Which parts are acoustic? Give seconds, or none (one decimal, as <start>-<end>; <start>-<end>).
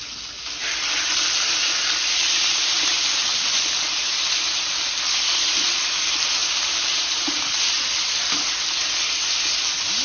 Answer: 0.0-4.1; 4.9-6.4; 7.7-10.0